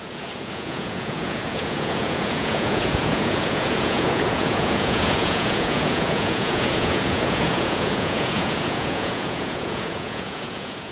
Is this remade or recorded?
remade